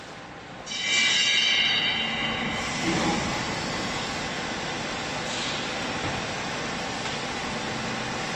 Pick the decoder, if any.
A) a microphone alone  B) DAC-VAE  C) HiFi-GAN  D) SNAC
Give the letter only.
A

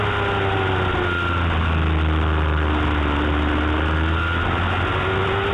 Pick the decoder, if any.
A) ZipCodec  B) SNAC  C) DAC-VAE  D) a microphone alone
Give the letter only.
D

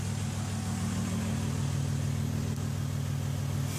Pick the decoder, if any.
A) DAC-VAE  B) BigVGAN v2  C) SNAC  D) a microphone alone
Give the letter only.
D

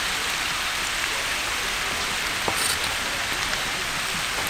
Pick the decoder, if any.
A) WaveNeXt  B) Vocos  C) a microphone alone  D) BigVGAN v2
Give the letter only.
C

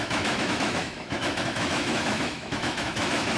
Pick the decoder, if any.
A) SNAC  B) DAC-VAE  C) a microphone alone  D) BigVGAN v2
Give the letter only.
B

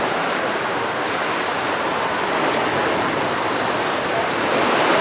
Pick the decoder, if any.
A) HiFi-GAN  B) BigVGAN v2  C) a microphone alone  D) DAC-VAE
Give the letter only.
C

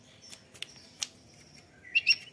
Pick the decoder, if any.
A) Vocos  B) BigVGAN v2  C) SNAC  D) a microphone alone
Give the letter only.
D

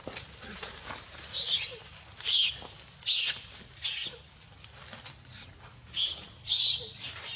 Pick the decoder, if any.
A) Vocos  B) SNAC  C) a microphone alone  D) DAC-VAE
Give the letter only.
C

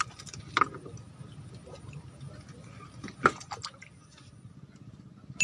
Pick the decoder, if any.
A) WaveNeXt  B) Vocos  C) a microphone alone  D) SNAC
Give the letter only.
C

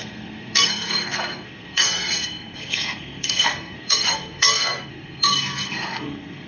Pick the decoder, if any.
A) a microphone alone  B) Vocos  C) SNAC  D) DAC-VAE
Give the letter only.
C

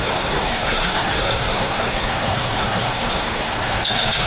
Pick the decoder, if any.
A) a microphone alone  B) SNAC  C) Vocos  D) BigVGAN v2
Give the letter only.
B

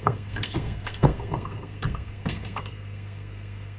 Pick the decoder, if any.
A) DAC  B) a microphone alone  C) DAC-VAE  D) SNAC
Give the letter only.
D